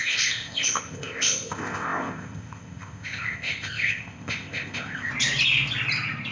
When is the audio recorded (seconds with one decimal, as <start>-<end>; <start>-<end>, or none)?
5.1-6.3